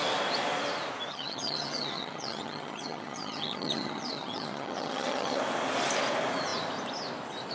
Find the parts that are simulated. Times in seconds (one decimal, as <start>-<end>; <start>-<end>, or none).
1.1-5.4